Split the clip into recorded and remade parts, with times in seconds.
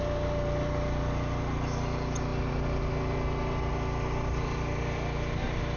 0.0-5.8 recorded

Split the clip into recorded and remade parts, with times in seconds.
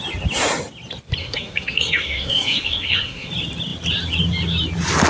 0.0-1.2 recorded; 1.2-3.3 remade; 3.3-5.1 recorded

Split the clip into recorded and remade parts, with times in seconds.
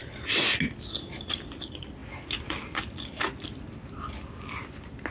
0.0-5.1 recorded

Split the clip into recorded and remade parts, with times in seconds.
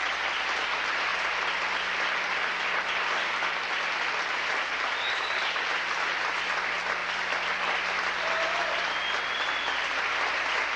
0.0-10.8 recorded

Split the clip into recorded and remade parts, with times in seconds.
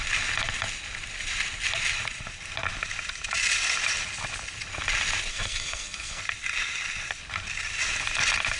0.0-5.3 recorded; 5.3-6.2 remade; 6.2-8.6 recorded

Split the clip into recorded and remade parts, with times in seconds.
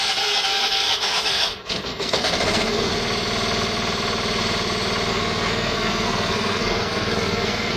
0.0-2.9 remade; 2.9-5.1 recorded; 5.1-7.8 remade